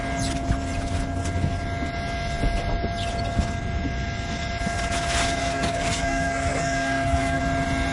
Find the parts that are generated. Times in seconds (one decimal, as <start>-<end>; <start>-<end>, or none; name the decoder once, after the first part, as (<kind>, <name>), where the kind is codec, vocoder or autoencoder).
5.4-7.4 (codec, SNAC)